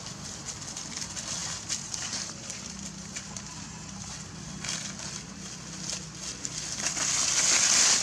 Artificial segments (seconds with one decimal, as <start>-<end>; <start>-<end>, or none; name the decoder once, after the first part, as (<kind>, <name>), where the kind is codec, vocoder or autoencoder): 1.4-4.3 (vocoder, BigVGAN v2)